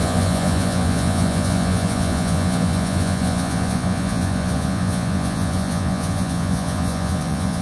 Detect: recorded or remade remade